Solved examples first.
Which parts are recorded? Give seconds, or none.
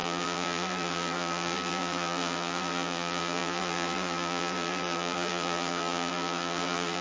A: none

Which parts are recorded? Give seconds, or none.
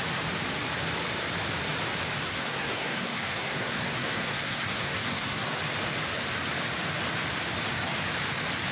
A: 0.0-2.2; 5.6-8.7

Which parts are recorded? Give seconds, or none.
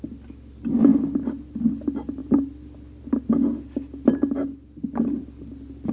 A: 0.0-4.4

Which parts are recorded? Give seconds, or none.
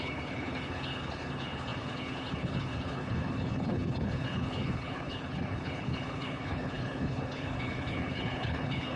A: none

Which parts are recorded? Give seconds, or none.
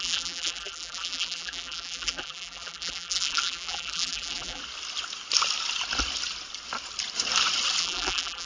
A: 4.6-7.8